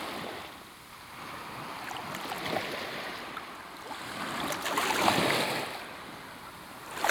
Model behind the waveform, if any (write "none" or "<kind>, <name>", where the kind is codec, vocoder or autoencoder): none